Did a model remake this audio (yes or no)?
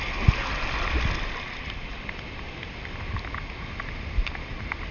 no